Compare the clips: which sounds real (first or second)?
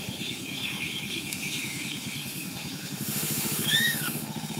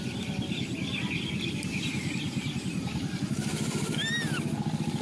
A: second